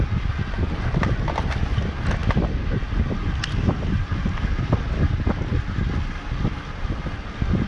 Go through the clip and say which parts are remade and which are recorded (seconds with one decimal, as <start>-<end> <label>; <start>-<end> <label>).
0.0-7.7 recorded